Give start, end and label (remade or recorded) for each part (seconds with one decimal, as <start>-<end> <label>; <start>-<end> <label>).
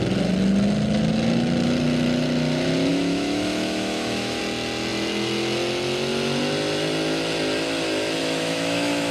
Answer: 0.0-2.9 recorded; 2.9-4.4 remade; 4.4-8.2 recorded; 8.2-9.1 remade